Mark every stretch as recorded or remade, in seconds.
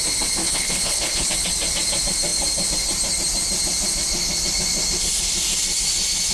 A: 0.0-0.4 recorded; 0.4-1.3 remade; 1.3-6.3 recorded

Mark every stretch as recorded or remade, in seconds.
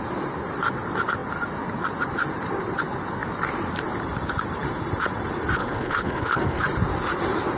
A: 0.0-5.6 recorded; 5.6-6.6 remade; 6.6-7.6 recorded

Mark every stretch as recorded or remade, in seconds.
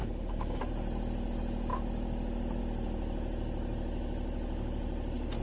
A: 0.0-0.6 remade; 0.6-5.4 recorded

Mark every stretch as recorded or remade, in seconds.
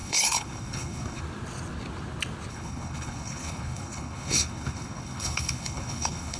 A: 0.0-1.2 remade; 1.2-2.5 recorded; 2.5-6.4 remade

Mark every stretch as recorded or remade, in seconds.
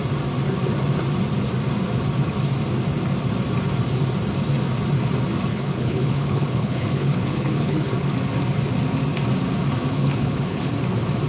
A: 0.0-5.5 recorded; 5.5-7.9 remade; 7.9-9.9 recorded; 9.9-10.7 remade; 10.7-11.3 recorded